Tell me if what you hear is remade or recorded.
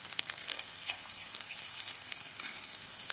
remade